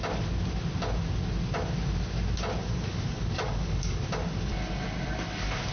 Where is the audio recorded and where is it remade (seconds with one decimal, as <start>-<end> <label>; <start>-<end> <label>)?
0.0-2.6 recorded; 2.6-4.1 remade; 4.1-5.7 recorded